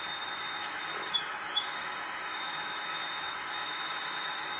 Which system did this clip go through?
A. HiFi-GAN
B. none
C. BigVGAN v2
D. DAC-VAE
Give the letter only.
D